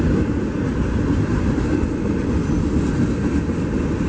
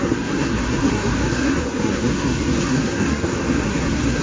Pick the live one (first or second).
first